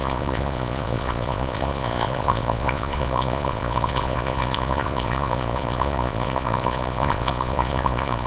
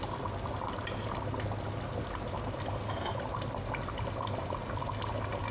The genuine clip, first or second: second